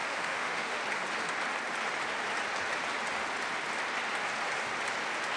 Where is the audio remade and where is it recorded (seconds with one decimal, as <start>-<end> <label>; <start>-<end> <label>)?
0.0-0.8 remade; 0.8-5.4 recorded